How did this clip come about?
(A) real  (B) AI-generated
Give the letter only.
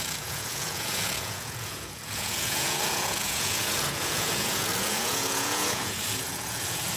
B